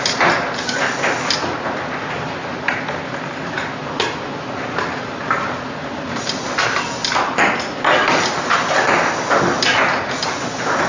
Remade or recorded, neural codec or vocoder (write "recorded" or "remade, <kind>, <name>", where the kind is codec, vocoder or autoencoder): recorded